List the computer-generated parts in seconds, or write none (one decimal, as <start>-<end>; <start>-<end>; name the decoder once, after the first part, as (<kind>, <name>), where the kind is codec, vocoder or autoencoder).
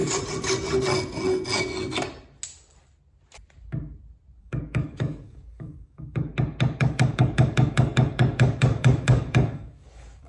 4.4-6.3 (codec, DAC); 6.8-10.3